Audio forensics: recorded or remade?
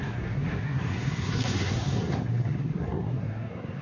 remade